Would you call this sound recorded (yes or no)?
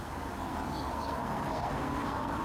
no